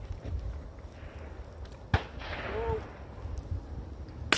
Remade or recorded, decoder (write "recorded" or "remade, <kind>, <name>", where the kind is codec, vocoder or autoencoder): recorded